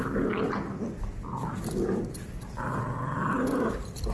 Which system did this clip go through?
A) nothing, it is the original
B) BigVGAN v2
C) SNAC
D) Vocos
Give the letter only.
A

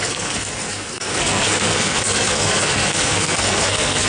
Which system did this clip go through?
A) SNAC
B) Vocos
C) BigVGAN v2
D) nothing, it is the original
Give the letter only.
A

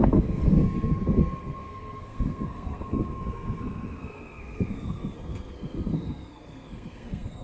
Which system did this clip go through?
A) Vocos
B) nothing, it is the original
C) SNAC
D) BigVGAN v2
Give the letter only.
C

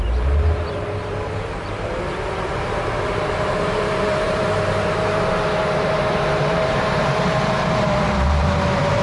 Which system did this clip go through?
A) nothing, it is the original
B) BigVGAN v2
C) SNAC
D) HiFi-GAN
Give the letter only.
B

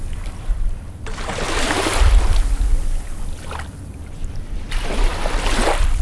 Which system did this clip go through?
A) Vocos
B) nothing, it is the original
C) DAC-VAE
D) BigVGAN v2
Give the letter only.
B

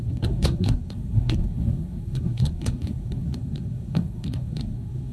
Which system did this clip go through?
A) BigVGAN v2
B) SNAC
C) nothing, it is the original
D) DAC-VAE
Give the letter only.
B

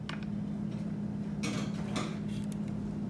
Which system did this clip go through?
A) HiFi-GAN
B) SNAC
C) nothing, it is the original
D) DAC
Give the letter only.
C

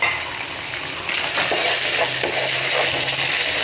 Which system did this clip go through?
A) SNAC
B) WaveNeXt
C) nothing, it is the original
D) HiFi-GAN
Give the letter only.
C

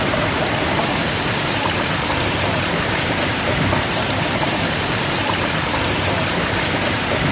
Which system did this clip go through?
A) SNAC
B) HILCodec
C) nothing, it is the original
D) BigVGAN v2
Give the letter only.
D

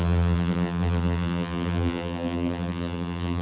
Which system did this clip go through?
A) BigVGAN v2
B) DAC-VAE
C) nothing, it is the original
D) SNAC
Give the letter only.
A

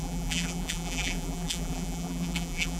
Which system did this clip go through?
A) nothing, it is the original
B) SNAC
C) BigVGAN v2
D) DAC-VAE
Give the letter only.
C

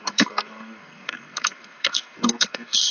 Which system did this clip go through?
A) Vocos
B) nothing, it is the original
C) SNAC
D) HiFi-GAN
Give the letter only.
C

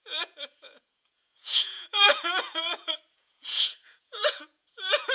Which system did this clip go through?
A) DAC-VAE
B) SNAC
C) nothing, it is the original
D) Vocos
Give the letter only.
D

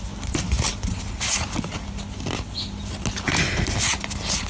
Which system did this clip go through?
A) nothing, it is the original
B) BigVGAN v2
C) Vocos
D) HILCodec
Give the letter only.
A